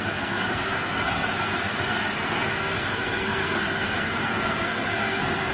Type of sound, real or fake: fake